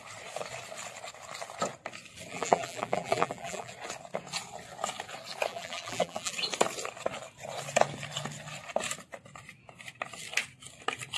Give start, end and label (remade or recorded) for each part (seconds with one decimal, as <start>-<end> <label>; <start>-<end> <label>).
0.0-2.3 recorded; 2.3-3.7 remade; 3.7-5.5 recorded; 5.5-6.3 remade; 6.3-11.2 recorded